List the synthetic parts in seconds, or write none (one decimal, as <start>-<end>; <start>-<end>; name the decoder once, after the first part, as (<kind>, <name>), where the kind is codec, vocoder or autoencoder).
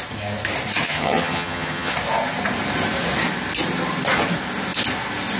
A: 0.8-1.9 (vocoder, HiFi-GAN)